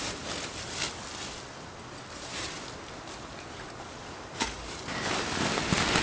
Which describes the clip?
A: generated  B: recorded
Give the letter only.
B